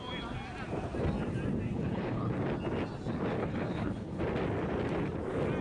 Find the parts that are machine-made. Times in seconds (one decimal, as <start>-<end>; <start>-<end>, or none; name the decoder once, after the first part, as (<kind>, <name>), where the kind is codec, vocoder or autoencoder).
1.7-2.3 (codec, HILCodec); 3.4-4.2